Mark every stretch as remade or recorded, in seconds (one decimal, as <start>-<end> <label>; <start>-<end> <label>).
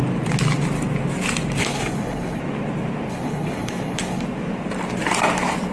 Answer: 0.0-1.6 recorded; 1.6-2.4 remade; 2.4-3.1 recorded; 3.1-4.2 remade; 4.2-5.7 recorded